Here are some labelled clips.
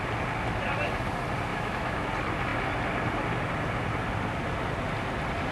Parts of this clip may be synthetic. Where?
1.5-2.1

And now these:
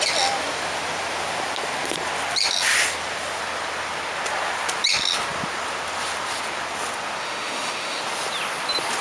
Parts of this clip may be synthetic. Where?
7.2-8.0

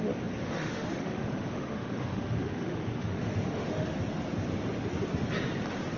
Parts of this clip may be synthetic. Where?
0.4-4.0

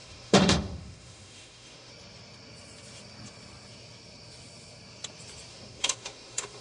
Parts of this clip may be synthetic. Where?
0.0-1.9; 5.5-6.6

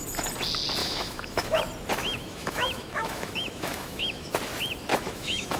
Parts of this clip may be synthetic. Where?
0.8-1.6; 2.0-4.3; 4.9-5.6